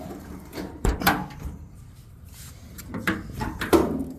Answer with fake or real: fake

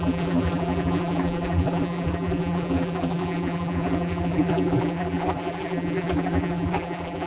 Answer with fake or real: fake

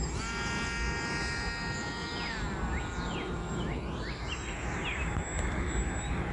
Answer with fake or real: real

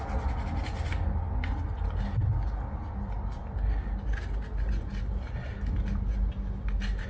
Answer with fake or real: real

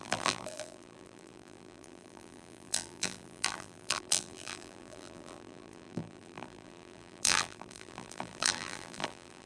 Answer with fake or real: fake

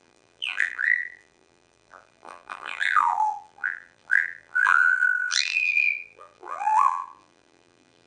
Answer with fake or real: fake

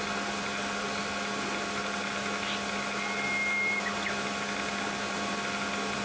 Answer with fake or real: real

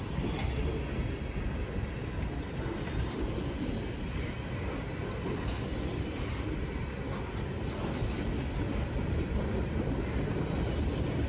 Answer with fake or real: real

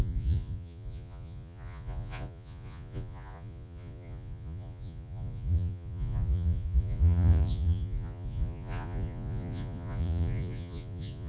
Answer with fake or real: fake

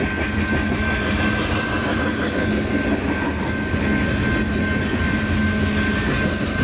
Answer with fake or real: real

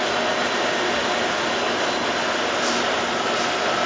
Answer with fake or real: real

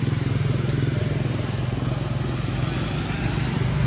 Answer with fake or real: real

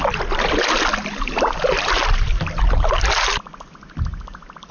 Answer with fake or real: real